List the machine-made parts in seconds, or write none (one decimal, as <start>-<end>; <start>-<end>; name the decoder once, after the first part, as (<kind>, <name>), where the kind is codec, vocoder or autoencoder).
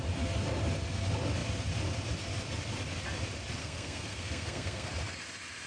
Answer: 3.6-4.9 (codec, SNAC)